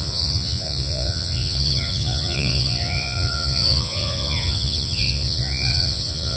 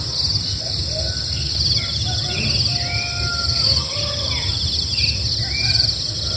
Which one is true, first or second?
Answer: second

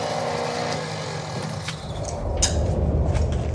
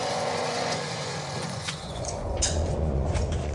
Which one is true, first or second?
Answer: first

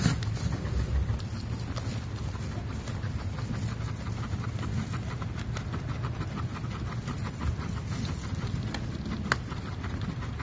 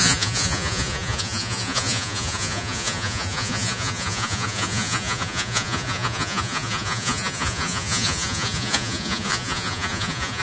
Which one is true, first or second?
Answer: first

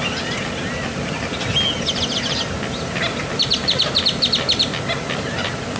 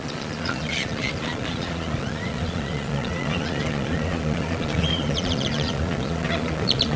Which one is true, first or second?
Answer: first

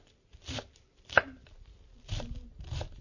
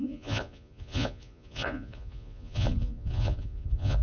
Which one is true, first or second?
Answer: first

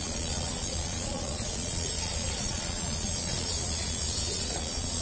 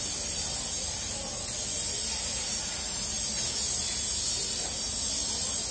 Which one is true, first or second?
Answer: second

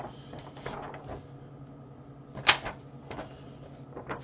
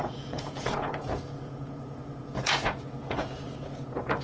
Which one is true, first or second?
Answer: first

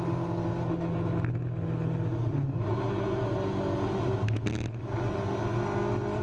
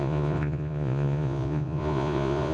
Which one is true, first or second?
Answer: first